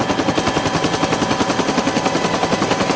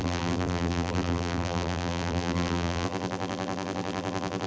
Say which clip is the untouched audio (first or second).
first